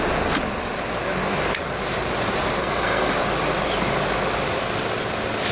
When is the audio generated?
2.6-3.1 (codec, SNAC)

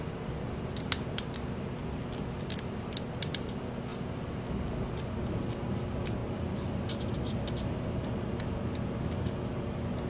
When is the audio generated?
none

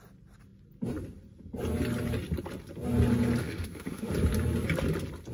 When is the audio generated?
3.4-4.1 (autoencoder, DAC-VAE)

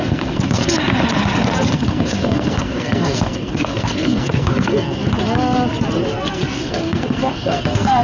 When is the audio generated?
0.0-0.6 (codec, SNAC); 1.7-5.0; 6.1-8.0